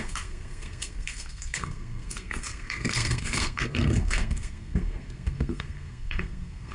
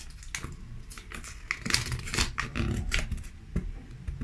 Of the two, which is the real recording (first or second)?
second